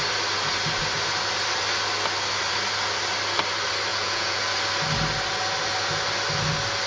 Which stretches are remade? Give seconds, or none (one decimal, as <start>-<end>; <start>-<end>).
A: 3.9-4.4